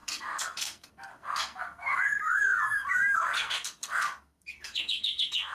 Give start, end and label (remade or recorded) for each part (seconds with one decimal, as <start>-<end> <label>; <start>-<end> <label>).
0.0-5.5 remade